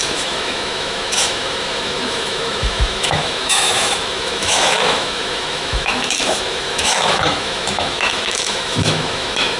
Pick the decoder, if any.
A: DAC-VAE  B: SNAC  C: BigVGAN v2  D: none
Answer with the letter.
A